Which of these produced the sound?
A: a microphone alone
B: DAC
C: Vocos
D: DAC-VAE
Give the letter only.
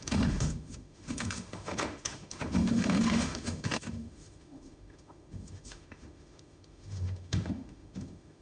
D